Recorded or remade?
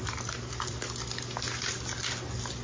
recorded